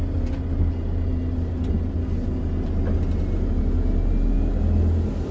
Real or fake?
real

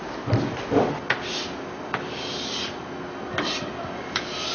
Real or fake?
real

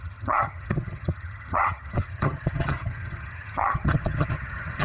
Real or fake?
fake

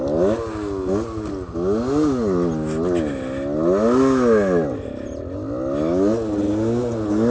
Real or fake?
real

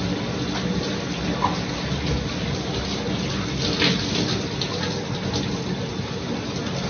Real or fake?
real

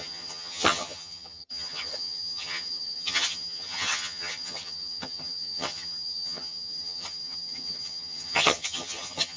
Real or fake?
fake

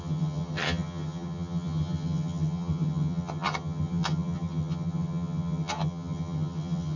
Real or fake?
fake